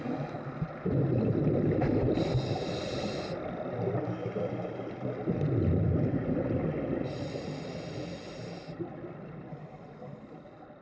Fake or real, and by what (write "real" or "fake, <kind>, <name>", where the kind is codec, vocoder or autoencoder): real